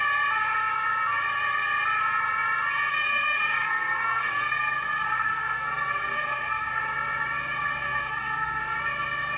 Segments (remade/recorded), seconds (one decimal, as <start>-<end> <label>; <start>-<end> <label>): 0.0-2.9 recorded; 2.9-6.8 remade; 6.8-7.8 recorded; 7.8-8.6 remade; 8.6-9.4 recorded